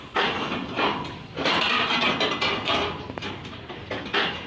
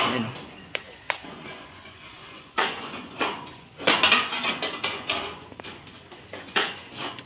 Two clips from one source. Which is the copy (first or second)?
second